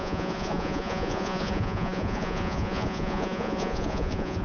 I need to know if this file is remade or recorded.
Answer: remade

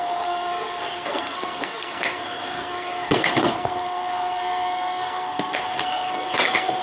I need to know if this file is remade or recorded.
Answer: remade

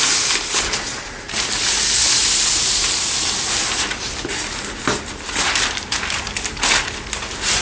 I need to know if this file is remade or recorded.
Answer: recorded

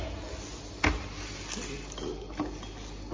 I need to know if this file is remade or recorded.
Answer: recorded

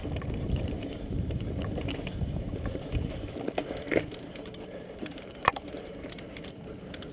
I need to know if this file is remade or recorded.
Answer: remade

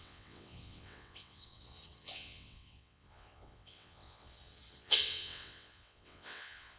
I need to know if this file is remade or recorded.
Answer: remade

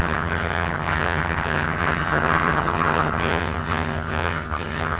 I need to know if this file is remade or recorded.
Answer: remade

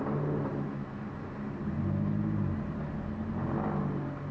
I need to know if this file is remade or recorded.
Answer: recorded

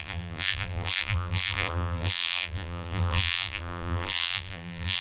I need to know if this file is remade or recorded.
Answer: remade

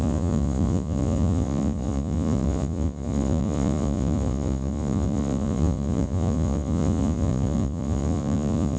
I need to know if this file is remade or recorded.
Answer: remade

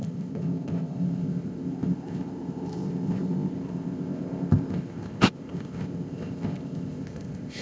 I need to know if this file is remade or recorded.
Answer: remade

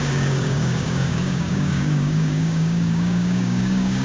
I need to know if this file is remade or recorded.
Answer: remade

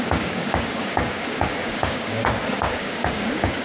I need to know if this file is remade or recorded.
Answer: remade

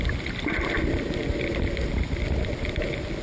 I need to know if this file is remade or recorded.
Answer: recorded